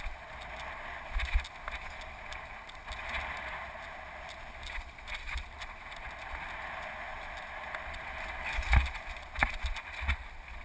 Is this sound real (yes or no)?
yes